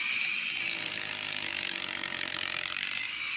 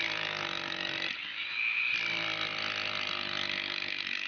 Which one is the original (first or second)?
second